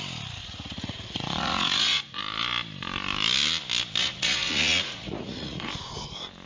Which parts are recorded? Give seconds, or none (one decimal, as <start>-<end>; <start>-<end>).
0.0-0.4; 2.2-4.0; 5.7-6.5